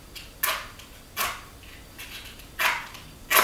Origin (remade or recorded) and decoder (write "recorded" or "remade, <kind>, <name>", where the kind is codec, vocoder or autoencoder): recorded